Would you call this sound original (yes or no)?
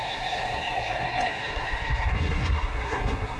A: no